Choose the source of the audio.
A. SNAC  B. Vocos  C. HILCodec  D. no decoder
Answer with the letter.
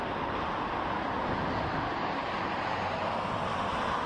D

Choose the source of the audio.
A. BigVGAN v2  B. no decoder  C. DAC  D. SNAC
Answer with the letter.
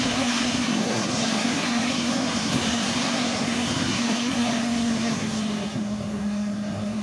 D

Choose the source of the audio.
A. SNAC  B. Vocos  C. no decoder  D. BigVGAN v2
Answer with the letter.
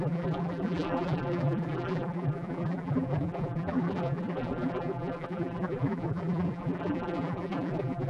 D